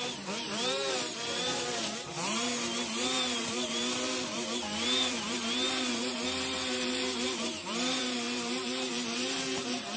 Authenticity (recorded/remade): remade